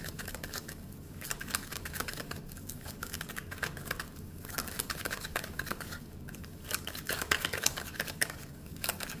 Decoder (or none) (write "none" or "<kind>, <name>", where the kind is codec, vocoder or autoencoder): codec, DAC